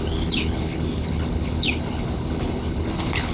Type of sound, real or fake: fake